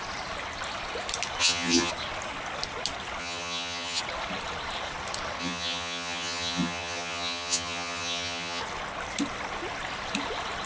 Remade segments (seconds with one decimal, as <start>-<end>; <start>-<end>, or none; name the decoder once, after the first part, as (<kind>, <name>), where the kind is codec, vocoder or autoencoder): 1.4-1.9 (vocoder, HiFi-GAN); 3.2-4.0; 5.4-8.6